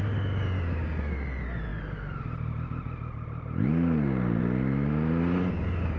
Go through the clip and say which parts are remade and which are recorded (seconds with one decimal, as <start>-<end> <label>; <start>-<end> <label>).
0.0-6.0 recorded